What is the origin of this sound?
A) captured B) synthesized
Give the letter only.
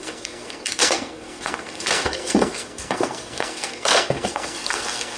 B